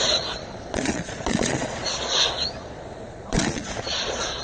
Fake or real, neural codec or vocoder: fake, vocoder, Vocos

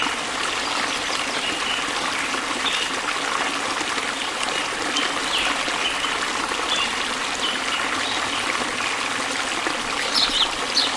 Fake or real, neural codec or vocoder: real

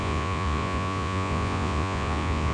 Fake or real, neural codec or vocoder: fake, vocoder, Vocos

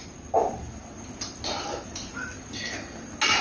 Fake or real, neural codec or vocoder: real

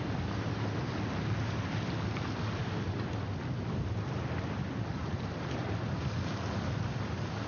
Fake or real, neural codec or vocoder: real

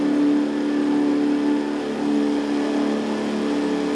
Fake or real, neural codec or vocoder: real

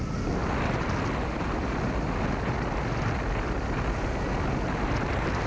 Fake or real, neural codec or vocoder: real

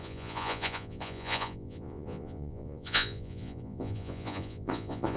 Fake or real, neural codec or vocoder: fake, vocoder, Vocos